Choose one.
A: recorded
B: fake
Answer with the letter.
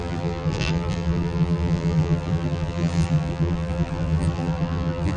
B